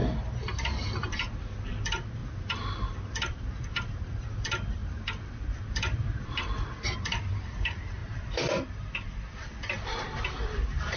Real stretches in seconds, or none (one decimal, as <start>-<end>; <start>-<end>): 0.0-1.8